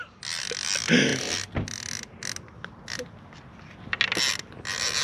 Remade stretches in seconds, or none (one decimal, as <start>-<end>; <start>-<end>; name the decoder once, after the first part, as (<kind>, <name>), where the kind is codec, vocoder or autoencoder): none